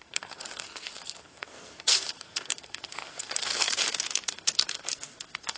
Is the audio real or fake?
fake